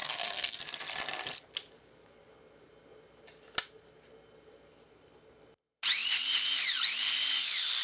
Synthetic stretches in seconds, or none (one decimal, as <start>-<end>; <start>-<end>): 0.0-0.6